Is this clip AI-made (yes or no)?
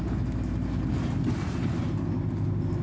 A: no